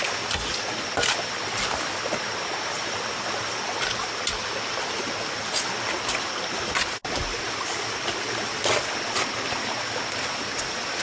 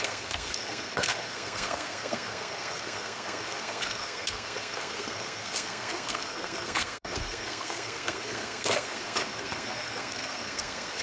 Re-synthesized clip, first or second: second